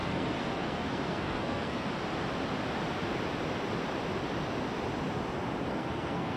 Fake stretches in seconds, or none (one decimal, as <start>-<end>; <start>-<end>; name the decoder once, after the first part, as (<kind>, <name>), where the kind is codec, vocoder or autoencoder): 0.0-1.9 (codec, SNAC); 5.7-6.4